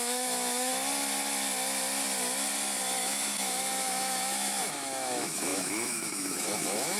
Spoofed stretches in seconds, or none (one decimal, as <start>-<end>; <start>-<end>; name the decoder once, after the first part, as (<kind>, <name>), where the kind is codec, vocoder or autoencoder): 0.0-0.7 (autoencoder, DAC-VAE); 3.0-7.0